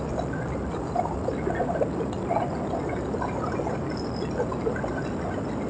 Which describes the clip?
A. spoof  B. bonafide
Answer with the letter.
B